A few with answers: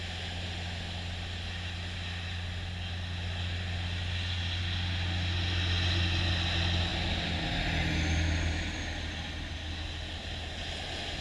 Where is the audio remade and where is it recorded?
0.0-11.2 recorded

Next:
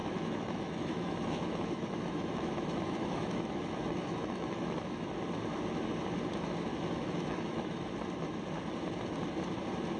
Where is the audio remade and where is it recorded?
0.0-5.1 remade; 5.1-6.7 recorded; 6.7-7.9 remade; 7.9-10.0 recorded

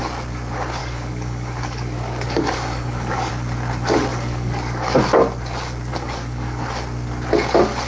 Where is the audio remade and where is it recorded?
0.0-0.8 recorded; 0.8-3.3 remade; 3.3-4.1 recorded; 4.1-5.0 remade; 5.0-5.9 recorded; 5.9-6.7 remade; 6.7-7.9 recorded

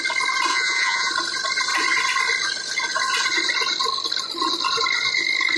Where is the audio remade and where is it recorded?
0.0-0.5 recorded; 0.5-1.1 remade; 1.1-5.6 recorded

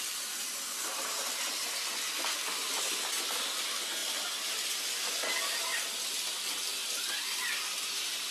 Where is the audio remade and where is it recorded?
0.0-8.3 recorded